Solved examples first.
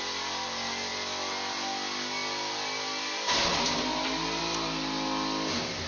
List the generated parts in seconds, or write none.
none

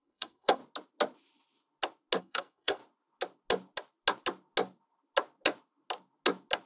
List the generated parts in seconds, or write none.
0.0-0.6 (codec, SNAC); 2.2-2.8